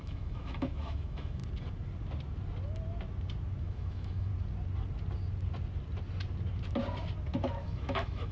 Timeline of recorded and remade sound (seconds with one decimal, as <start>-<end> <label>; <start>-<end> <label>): 0.0-1.4 remade; 1.4-3.6 recorded; 3.6-4.3 remade; 4.3-7.6 recorded; 7.6-8.3 remade